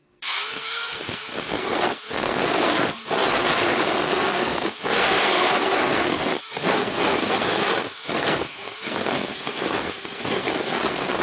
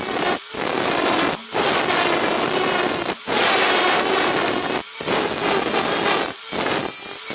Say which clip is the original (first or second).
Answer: second